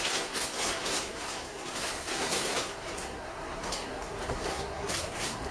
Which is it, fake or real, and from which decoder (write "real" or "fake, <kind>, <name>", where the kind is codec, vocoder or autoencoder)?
fake, codec, SNAC